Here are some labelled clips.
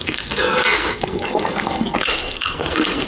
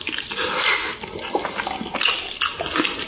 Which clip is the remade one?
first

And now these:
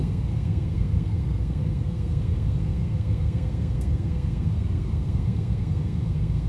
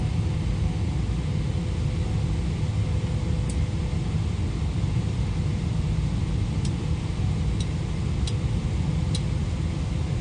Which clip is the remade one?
first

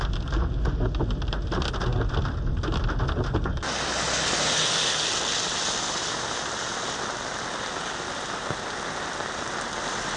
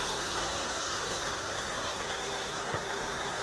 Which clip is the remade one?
second